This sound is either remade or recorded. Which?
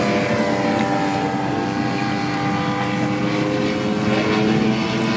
recorded